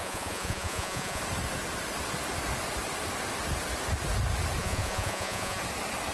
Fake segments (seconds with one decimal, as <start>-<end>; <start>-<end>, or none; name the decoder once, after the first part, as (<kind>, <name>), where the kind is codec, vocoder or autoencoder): 0.0-1.2 (vocoder, Vocos); 4.6-5.6

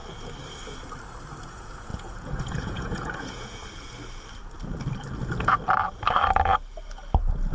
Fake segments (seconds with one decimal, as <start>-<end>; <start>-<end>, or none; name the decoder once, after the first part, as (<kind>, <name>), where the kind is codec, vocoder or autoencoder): 1.4-3.6 (vocoder, Vocos)

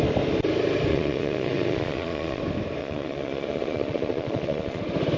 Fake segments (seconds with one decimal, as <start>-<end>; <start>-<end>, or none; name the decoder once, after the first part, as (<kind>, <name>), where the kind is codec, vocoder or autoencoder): 0.9-2.4 (vocoder, Vocos); 2.8-4.8

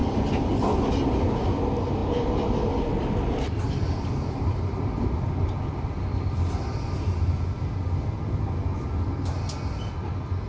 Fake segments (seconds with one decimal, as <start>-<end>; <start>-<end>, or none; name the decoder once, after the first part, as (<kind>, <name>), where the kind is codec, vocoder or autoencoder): none

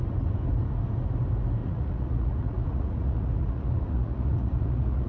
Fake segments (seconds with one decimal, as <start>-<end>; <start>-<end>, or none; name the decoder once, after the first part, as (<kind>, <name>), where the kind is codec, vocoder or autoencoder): 1.6-5.1 (vocoder, Vocos)

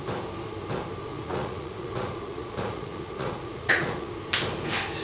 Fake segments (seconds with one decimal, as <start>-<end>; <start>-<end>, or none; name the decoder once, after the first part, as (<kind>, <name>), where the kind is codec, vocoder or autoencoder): 1.1-4.1 (vocoder, Vocos)

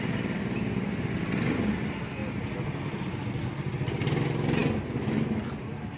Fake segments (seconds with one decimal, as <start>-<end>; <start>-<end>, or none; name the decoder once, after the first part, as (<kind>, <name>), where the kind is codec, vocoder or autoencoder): none

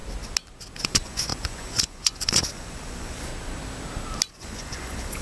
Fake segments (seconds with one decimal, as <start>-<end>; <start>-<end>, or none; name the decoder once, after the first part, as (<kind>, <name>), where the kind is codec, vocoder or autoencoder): 0.8-3.3 (vocoder, Vocos); 4.3-5.2